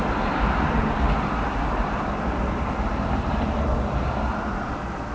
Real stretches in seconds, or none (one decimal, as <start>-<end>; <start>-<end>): 0.0-5.1